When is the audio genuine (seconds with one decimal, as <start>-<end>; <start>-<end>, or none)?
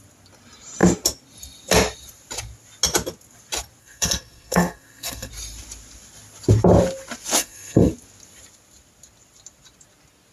0.0-3.8; 5.3-7.4; 7.9-10.3